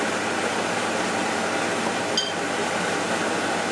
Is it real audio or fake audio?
real